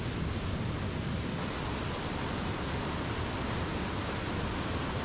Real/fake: real